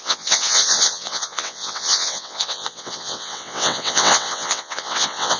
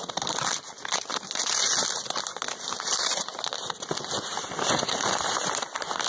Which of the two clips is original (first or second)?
second